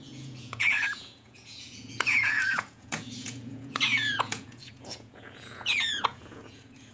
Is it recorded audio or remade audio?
remade